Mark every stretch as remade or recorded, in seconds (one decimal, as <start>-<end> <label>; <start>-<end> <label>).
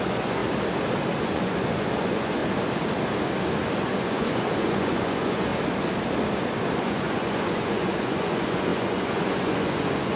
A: 0.0-0.4 remade; 0.4-1.2 recorded; 1.2-2.4 remade; 2.4-3.8 recorded; 3.8-5.5 remade; 5.5-6.8 recorded; 6.8-10.2 remade